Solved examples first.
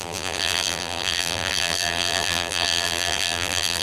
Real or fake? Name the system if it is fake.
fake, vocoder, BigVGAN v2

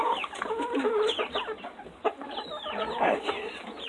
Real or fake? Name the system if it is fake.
fake, vocoder, BigVGAN v2